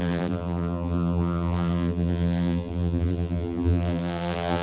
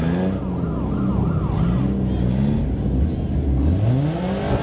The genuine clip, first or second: second